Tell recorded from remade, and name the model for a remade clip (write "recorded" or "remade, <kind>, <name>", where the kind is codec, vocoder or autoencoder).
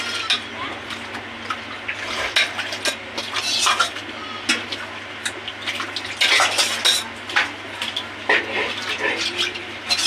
recorded